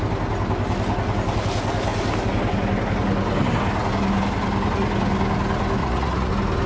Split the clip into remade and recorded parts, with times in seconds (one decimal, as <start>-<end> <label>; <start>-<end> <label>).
0.0-5.8 recorded; 5.8-6.3 remade; 6.3-6.7 recorded